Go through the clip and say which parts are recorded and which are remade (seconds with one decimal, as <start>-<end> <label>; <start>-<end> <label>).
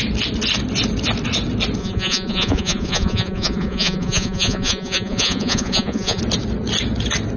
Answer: 0.0-1.8 recorded; 1.8-6.2 remade; 6.2-7.4 recorded